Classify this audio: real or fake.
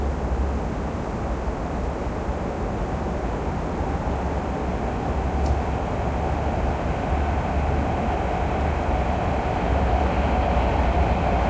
real